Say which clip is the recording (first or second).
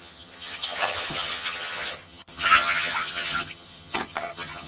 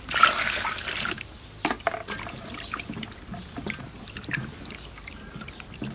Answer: second